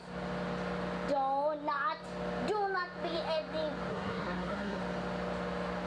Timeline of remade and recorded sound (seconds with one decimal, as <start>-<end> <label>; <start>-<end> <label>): 0.0-3.9 recorded; 3.9-4.8 remade; 4.8-5.9 recorded